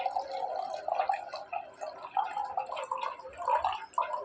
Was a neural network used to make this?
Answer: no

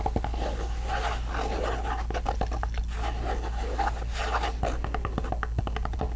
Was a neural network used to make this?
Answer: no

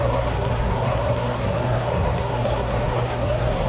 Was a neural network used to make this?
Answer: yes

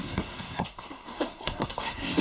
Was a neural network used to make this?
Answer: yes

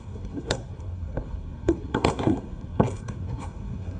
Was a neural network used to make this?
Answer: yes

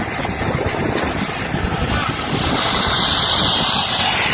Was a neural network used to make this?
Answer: no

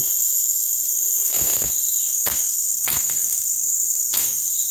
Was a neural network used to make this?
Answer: yes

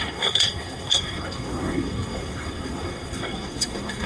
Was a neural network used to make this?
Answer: yes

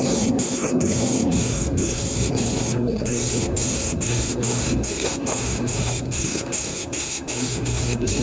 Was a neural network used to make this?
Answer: yes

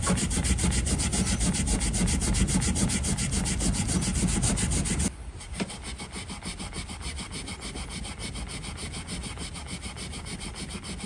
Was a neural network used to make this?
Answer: no